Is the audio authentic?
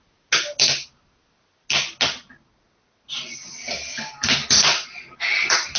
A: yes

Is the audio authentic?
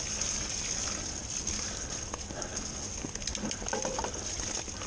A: yes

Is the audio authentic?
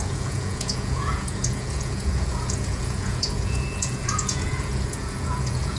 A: no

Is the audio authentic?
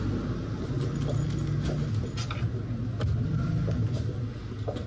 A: yes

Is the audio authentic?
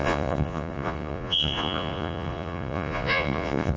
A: no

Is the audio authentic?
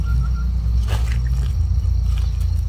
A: yes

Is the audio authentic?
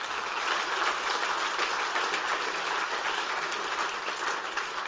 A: yes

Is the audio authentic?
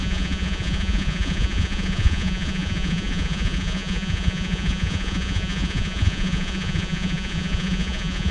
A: no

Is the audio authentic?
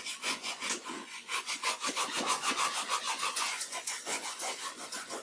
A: no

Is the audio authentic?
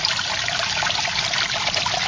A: yes